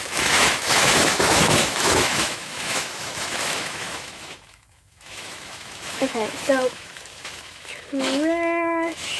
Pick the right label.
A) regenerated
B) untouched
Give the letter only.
A